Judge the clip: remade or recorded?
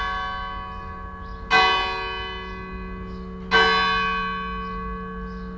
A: recorded